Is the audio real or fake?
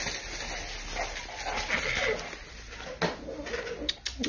real